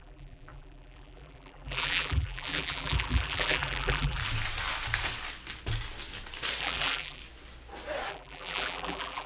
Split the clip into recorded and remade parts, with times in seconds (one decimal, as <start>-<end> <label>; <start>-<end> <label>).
0.0-4.2 remade; 4.2-6.6 recorded; 6.6-7.2 remade; 7.2-8.1 recorded; 8.1-9.3 remade

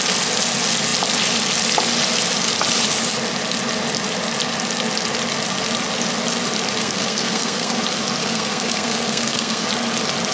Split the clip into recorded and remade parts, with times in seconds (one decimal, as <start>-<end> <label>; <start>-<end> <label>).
0.0-6.8 recorded; 6.8-7.8 remade; 7.8-8.2 recorded; 8.2-9.7 remade; 9.7-10.3 recorded